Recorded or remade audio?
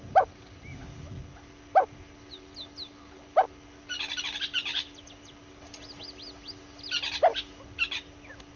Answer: recorded